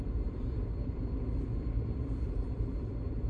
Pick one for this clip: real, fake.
fake